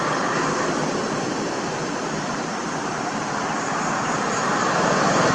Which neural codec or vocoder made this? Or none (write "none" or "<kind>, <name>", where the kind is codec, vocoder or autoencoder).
none